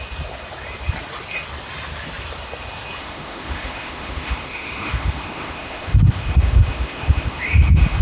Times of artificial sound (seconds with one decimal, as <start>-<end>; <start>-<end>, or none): 3.0-8.0